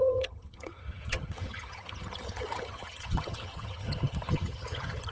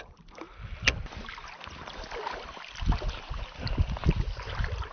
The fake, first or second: first